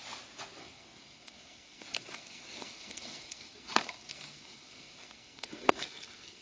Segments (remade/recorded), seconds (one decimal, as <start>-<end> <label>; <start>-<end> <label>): 0.0-0.6 recorded; 0.6-6.4 remade